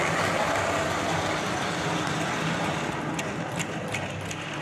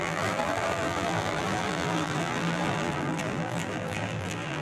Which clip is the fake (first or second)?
second